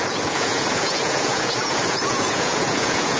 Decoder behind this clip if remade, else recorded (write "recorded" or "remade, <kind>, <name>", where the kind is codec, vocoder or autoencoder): remade, vocoder, Vocos